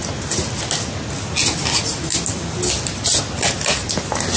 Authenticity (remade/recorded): recorded